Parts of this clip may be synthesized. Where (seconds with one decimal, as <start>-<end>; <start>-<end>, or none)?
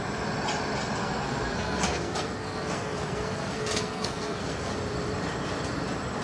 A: 1.0-4.7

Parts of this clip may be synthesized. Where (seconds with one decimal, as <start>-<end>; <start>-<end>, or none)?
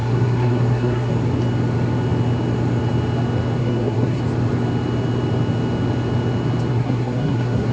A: 0.0-1.1; 3.6-4.2; 6.7-7.7